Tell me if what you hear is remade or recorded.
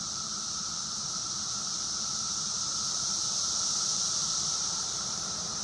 remade